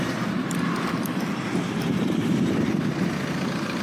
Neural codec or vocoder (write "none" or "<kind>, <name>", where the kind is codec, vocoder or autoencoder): vocoder, BigVGAN v2